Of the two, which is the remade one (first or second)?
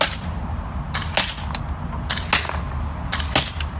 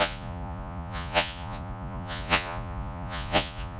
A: second